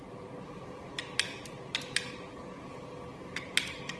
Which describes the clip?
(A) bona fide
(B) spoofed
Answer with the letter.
A